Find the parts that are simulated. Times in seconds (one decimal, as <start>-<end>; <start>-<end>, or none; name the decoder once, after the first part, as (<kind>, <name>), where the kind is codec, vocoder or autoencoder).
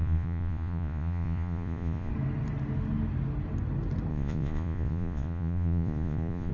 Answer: 0.0-2.1 (vocoder, Vocos); 4.1-6.5